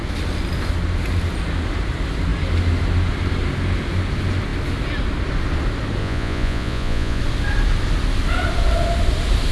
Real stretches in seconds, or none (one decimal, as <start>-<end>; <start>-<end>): 0.0-6.0; 7.2-9.5